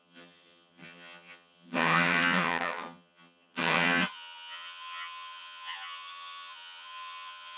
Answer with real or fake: fake